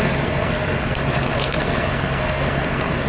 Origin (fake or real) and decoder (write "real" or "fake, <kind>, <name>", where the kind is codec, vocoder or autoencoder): fake, codec, SNAC